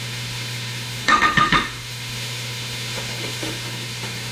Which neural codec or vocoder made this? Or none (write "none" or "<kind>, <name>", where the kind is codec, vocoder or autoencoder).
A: autoencoder, DAC-VAE